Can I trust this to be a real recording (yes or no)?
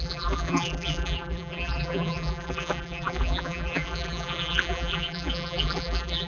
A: no